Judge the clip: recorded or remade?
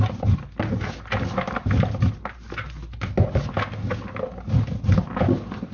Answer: recorded